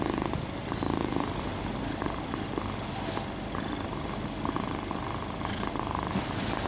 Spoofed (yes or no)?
no